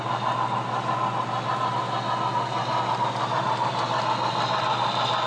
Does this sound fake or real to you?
real